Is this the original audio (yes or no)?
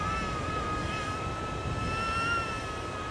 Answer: yes